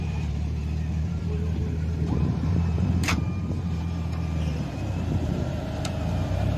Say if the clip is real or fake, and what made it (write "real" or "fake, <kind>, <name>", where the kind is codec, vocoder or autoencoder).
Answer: fake, vocoder, BigVGAN v2